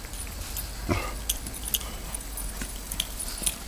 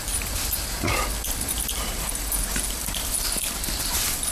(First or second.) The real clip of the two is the first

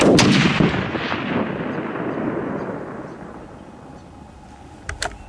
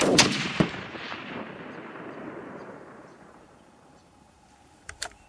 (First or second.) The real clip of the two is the first